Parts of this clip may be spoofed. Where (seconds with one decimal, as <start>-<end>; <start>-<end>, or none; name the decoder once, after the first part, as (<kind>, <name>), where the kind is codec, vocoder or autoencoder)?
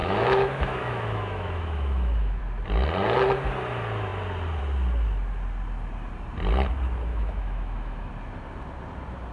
0.0-2.4 (autoencoder, DAC-VAE); 7.1-8.1